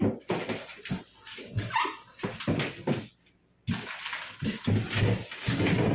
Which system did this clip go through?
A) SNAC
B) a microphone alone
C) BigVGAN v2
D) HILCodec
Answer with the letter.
B